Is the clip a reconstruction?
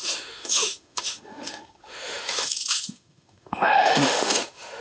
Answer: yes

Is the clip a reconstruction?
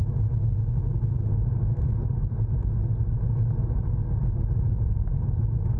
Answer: no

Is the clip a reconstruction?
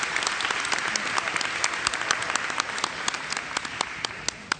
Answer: no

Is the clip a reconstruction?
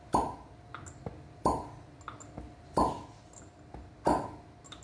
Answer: no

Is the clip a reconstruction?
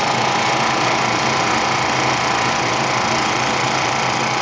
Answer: no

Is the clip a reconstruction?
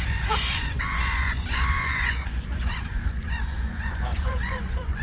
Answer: yes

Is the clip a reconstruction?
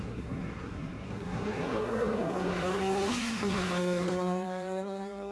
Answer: yes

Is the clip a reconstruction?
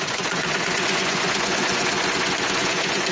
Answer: yes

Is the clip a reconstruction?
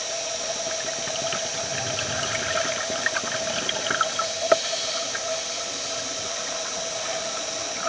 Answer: no